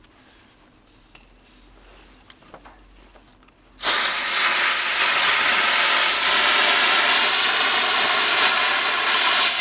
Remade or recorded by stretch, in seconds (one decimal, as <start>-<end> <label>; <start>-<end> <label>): 0.0-5.1 recorded; 5.1-5.6 remade; 5.6-9.6 recorded